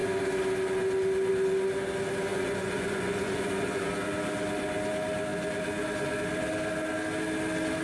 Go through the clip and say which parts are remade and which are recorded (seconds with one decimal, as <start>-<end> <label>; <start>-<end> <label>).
0.0-2.3 recorded; 2.3-3.9 remade; 3.9-7.8 recorded